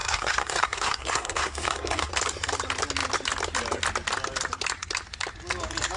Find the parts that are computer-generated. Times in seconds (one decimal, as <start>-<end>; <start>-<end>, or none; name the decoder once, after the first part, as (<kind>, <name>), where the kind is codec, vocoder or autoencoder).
0.0-2.1 (codec, SNAC)